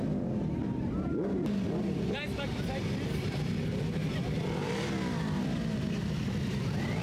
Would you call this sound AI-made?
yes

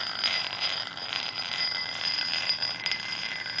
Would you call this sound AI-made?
yes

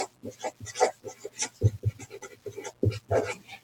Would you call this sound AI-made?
no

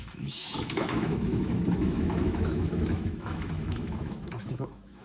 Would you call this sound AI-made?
yes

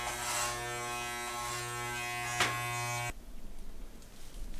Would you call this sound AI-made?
no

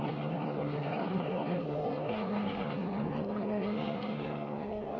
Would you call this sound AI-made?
yes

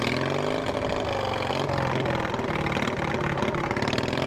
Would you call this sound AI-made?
no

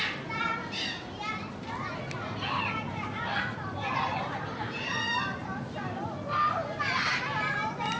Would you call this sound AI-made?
no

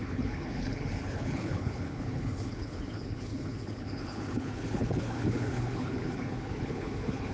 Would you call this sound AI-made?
yes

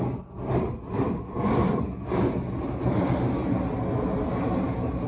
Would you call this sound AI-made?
no